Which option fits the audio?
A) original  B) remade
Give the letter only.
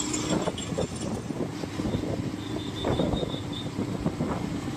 A